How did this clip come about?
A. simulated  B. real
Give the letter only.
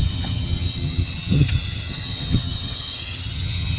A